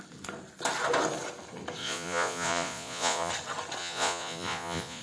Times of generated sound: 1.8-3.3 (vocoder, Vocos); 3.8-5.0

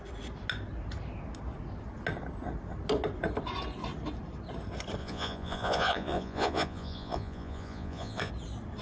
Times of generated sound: 5.0-8.3 (vocoder, Vocos)

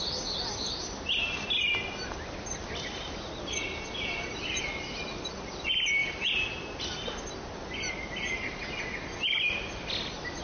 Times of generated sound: none

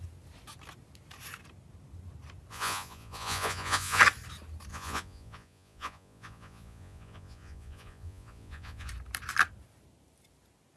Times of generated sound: 2.5-4.0 (vocoder, Vocos); 4.7-8.9

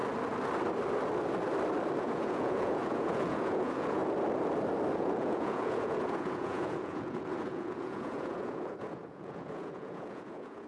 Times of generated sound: 2.0-4.0 (vocoder, Vocos); 5.0-10.7

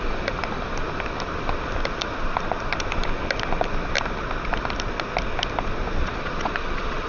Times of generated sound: 6.0-7.1 (vocoder, Vocos)